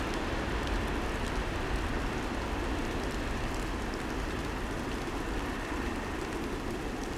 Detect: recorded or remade recorded